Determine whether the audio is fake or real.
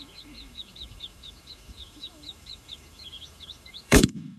fake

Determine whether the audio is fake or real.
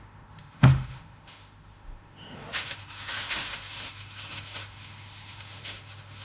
fake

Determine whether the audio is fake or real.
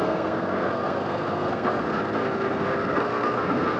fake